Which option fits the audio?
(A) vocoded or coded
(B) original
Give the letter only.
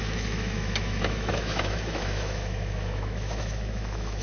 A